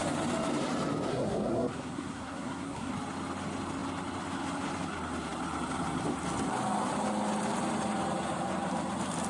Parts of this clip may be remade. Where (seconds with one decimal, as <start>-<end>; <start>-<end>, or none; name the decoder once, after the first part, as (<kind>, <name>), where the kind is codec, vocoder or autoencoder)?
1.1-2.9 (codec, SNAC)

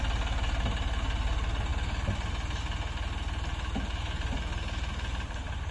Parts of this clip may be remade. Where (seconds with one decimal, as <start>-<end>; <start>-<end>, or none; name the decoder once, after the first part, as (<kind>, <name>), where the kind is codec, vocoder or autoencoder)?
none

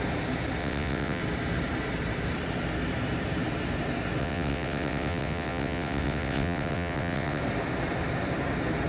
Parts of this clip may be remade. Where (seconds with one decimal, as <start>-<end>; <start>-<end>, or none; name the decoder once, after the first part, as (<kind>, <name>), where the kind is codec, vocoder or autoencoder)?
0.6-1.2 (vocoder, WaveNeXt); 4.2-7.4

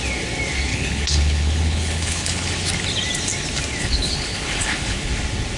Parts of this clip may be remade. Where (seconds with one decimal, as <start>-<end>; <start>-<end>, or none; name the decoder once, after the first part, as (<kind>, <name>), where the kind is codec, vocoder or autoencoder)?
0.7-2.5 (codec, HILCodec); 3.8-5.1

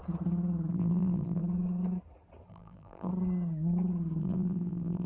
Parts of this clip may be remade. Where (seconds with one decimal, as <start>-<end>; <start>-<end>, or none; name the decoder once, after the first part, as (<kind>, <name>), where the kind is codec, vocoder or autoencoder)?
0.7-1.4 (vocoder, BigVGAN v2); 2.5-3.1; 4.2-5.1

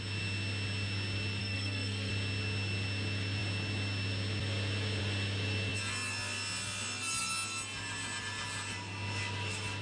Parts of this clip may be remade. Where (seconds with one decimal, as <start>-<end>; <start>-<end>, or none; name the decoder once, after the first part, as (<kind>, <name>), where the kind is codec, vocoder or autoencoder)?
1.4-2.1 (codec, SNAC)

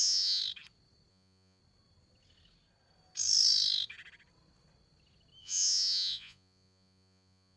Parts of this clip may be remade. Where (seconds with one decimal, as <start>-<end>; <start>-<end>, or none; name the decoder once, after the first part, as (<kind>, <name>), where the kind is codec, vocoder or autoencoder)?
0.0-0.4 (vocoder, Vocos); 1.1-1.6; 5.4-7.6

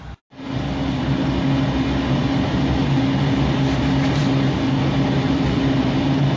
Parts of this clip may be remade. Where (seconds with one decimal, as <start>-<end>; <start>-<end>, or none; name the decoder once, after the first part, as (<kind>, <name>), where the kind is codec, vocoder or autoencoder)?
none